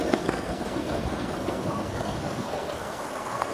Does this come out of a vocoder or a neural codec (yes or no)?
yes